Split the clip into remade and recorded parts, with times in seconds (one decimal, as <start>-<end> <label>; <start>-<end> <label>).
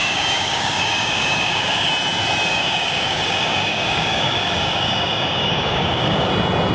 0.0-1.9 remade; 1.9-2.5 recorded; 2.5-6.3 remade; 6.3-6.7 recorded